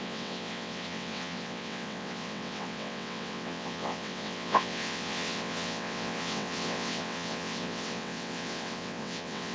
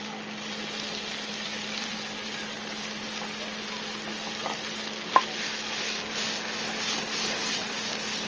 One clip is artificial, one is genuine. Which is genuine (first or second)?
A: second